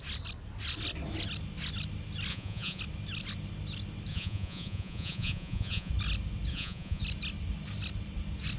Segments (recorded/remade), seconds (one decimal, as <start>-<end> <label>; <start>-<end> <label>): 0.0-2.3 recorded; 2.3-2.8 remade; 2.8-4.1 recorded; 4.1-5.9 remade; 5.9-6.5 recorded; 6.5-7.0 remade; 7.0-8.6 recorded